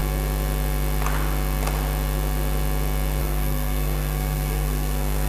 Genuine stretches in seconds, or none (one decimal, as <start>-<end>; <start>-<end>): 0.0-3.2